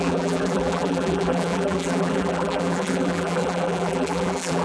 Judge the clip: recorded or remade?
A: remade